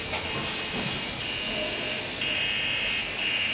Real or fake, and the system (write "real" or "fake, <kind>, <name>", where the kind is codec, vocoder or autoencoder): real